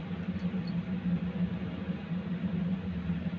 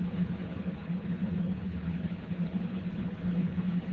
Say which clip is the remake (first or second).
second